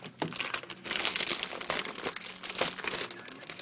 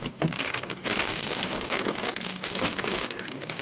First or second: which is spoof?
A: second